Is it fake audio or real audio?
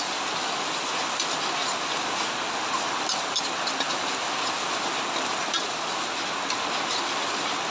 real